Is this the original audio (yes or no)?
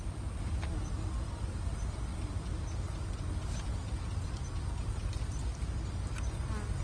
yes